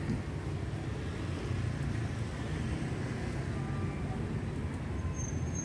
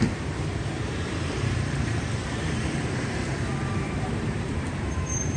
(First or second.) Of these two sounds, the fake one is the second